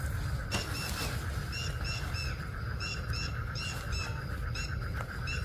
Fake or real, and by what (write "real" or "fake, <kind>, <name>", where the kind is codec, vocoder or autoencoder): real